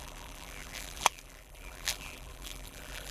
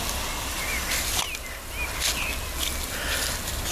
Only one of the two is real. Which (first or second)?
second